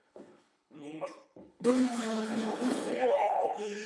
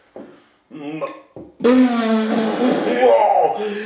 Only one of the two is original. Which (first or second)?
second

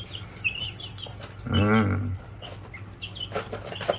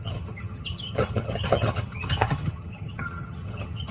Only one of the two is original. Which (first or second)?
first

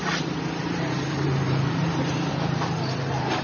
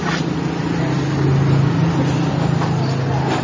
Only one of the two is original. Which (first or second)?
second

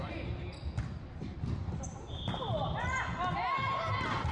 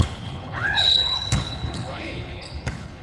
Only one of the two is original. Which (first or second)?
first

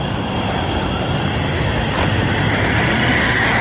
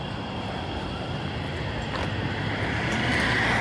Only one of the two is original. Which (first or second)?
second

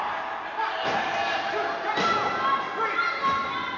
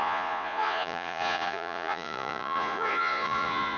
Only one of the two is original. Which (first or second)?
first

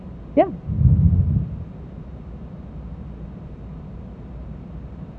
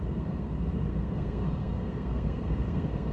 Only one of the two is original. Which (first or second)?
first